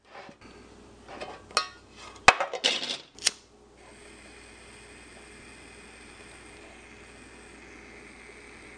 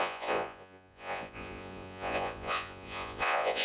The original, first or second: first